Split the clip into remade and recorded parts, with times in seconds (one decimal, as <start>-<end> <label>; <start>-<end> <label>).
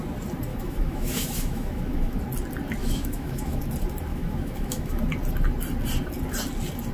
0.0-0.5 recorded; 0.5-2.2 remade; 2.2-2.8 recorded; 2.8-3.6 remade; 3.6-4.1 recorded; 4.1-5.0 remade; 5.0-6.9 recorded